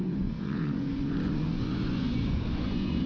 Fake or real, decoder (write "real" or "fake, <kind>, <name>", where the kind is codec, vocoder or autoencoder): fake, vocoder, Vocos